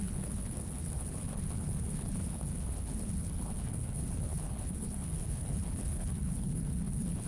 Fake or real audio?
fake